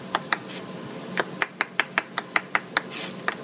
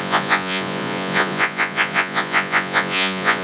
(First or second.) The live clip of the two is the first